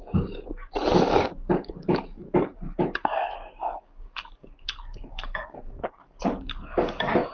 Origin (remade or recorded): remade